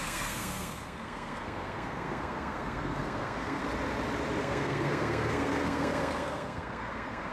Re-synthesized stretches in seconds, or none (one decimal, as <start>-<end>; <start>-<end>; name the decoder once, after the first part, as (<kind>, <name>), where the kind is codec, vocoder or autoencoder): 0.0-3.6 (codec, SNAC); 4.4-7.3